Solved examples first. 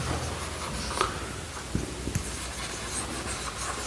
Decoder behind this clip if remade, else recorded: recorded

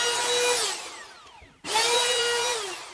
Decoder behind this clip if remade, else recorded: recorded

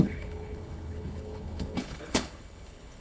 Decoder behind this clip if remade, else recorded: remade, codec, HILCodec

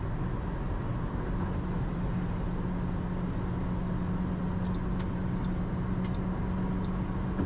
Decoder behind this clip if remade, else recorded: recorded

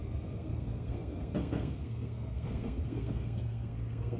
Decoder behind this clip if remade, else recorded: remade, codec, SNAC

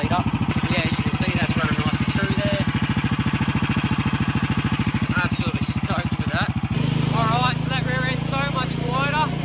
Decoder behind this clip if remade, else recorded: recorded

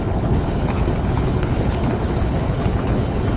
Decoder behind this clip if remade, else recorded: remade, codec, HILCodec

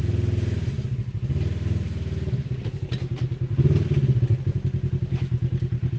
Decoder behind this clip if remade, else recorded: recorded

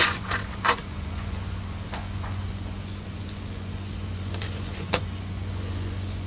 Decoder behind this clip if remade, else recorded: remade, vocoder, Vocos